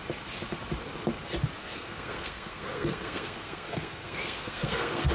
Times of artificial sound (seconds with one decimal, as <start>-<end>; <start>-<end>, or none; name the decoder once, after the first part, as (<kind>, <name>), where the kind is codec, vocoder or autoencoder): 1.6-5.1 (codec, SNAC)